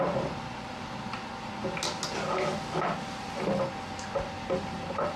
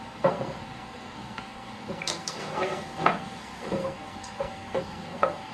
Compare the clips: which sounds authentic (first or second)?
first